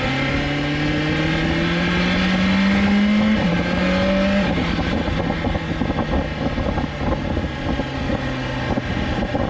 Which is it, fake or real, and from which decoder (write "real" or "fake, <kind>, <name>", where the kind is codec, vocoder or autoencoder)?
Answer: real